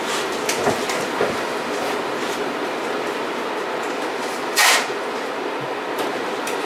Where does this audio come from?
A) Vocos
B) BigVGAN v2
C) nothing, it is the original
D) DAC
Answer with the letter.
C